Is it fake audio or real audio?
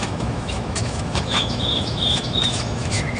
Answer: fake